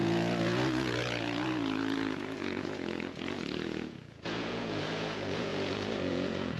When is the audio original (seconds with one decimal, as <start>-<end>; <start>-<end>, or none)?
none